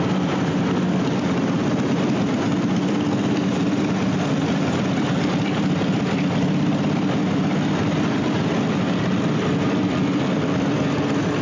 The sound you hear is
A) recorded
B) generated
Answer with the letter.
B